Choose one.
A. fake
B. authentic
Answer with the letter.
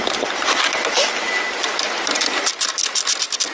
B